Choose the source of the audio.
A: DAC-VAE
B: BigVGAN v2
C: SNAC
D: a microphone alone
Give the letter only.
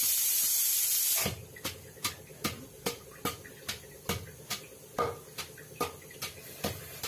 D